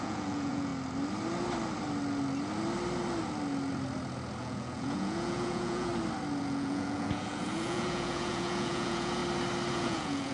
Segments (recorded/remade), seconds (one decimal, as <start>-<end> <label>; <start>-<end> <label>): 0.0-0.7 remade; 0.7-4.4 recorded; 4.4-5.9 remade; 5.9-6.4 recorded; 6.4-9.2 remade; 9.2-9.7 recorded; 9.7-10.3 remade